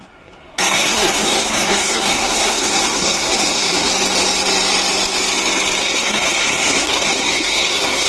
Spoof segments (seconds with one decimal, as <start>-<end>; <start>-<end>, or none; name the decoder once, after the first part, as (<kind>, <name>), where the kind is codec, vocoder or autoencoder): 0.0-3.9 (codec, SNAC); 5.8-8.1